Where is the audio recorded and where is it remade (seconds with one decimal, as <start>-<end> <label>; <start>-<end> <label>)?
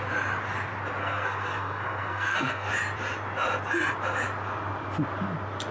0.0-1.0 recorded; 1.0-2.7 remade; 2.7-5.7 recorded